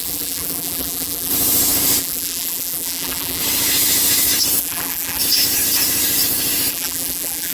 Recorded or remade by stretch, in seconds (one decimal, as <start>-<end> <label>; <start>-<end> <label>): 0.0-1.3 remade; 1.3-2.0 recorded; 2.0-3.4 remade; 3.4-4.6 recorded; 4.6-5.2 remade; 5.2-6.7 recorded; 6.7-7.5 remade